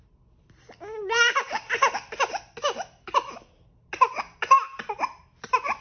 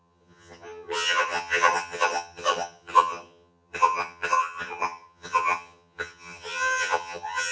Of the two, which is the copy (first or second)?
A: second